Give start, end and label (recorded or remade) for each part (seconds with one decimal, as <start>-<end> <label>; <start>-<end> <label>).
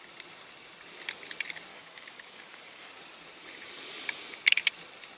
0.0-1.7 recorded; 1.7-2.9 remade; 2.9-5.2 recorded